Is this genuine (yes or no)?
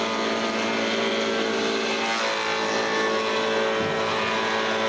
yes